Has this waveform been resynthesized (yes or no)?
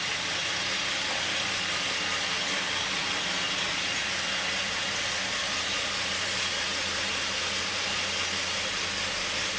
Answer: no